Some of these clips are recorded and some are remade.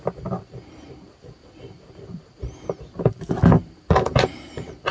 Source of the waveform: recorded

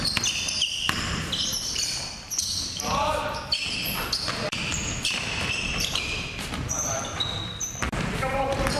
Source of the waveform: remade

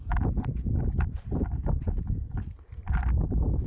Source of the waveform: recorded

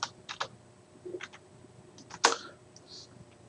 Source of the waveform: recorded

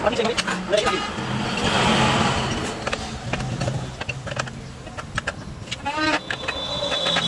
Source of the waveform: recorded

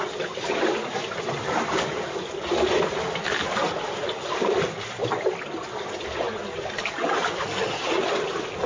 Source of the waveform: recorded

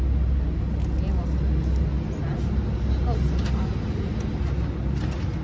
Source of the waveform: recorded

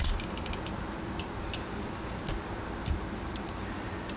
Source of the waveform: recorded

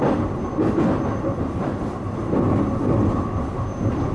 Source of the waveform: remade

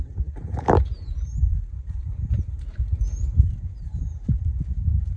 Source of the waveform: remade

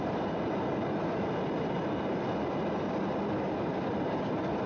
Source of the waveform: recorded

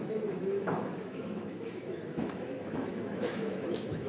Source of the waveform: remade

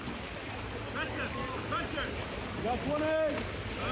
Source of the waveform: recorded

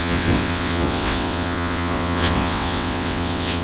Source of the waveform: remade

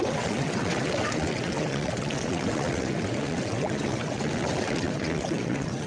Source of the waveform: remade